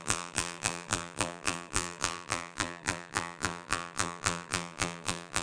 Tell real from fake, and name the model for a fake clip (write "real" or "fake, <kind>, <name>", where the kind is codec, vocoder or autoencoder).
fake, vocoder, BigVGAN v2